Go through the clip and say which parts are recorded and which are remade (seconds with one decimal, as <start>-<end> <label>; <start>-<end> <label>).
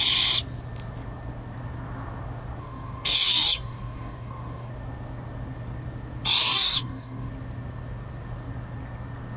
0.0-2.6 recorded; 2.6-4.7 remade; 4.7-6.4 recorded; 6.4-7.3 remade; 7.3-9.4 recorded